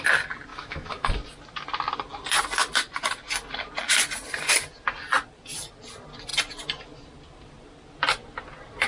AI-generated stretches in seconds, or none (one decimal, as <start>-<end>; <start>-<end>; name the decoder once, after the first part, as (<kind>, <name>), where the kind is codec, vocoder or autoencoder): 0.5-1.1 (autoencoder, DAC-VAE)